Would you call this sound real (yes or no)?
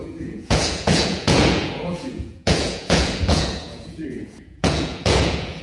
no